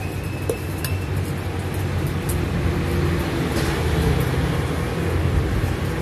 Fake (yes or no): no